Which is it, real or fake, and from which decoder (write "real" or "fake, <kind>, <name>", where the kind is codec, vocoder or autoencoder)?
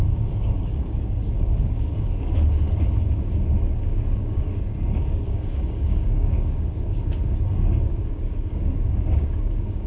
fake, codec, DAC